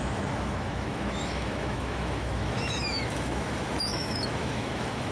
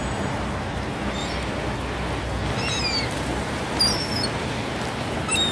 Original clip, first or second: second